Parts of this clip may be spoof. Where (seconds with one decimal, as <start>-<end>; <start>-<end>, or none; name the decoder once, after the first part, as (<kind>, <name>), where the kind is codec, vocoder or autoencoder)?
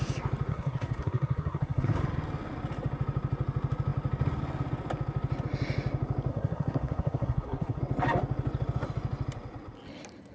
0.5-1.9 (codec, SNAC); 6.3-7.8